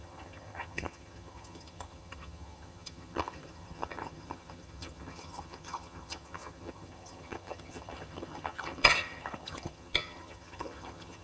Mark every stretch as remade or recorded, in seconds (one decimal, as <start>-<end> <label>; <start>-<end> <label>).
0.0-11.2 remade